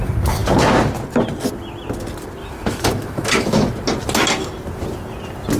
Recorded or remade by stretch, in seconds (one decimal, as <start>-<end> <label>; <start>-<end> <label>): 0.0-2.4 recorded; 2.4-3.7 remade; 3.7-5.6 recorded